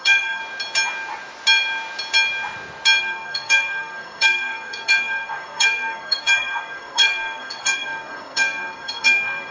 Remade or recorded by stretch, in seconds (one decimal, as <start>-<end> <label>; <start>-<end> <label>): 0.0-0.4 remade; 0.4-3.0 recorded; 3.0-9.5 remade